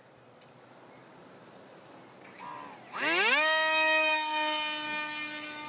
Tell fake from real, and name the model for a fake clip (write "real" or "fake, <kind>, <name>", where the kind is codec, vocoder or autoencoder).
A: real